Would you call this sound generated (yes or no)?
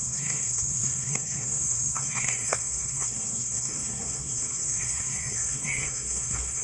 yes